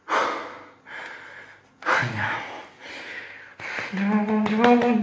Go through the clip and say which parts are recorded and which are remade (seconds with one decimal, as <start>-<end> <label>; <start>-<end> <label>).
0.0-1.7 recorded; 1.7-2.4 remade; 2.4-5.0 recorded